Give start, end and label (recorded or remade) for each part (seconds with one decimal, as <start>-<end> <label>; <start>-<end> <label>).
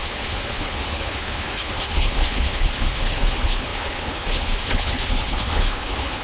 0.0-6.2 remade